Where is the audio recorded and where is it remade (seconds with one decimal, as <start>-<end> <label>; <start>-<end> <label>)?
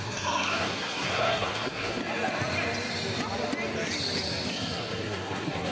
0.0-2.0 remade; 2.0-4.5 recorded; 4.5-5.7 remade